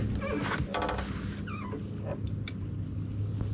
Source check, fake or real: real